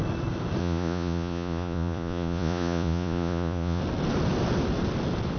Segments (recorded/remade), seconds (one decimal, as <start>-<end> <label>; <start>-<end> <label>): 0.0-0.6 recorded; 0.6-3.8 remade; 3.8-5.4 recorded